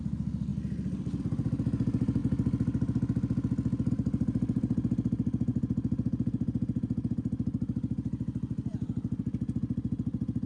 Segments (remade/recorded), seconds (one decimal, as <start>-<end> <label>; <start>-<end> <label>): 0.0-0.5 remade; 0.5-1.2 recorded; 1.2-2.2 remade; 2.2-3.9 recorded; 3.9-10.5 remade